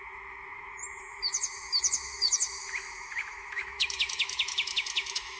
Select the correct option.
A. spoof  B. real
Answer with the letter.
A